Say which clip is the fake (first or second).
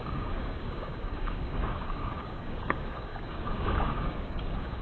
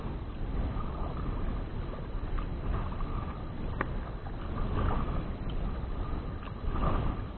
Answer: first